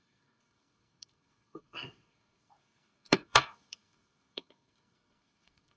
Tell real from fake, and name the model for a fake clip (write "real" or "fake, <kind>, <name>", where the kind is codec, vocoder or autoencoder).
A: fake, codec, SNAC